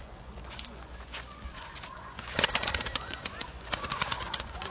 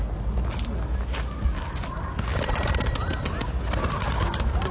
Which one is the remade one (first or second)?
first